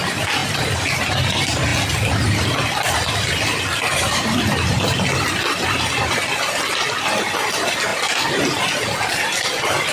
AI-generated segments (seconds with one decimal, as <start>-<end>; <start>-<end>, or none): none